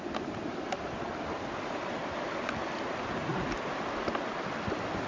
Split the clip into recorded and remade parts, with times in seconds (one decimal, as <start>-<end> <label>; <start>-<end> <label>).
0.0-5.1 recorded